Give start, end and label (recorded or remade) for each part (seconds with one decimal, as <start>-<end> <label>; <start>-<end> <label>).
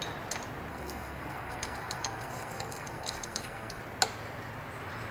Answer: 0.0-0.7 recorded; 0.7-3.8 remade; 3.8-5.1 recorded